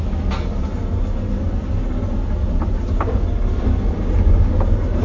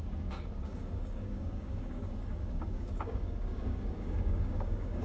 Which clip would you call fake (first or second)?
second